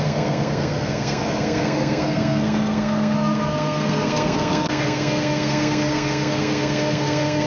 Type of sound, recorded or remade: remade